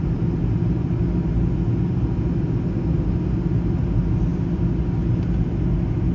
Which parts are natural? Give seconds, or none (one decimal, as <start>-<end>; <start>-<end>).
0.0-6.1